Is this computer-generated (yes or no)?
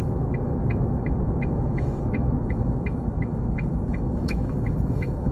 yes